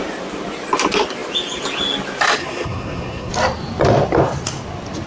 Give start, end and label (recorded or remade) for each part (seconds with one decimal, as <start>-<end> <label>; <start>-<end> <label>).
0.0-2.4 recorded; 2.4-3.3 remade; 3.3-5.1 recorded